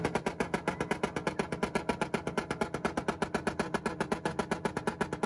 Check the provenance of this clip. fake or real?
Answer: real